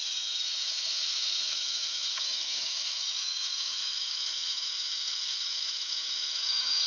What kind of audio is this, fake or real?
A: fake